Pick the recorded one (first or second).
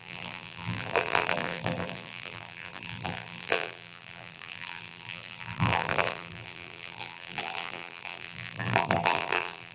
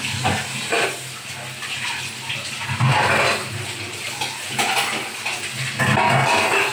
second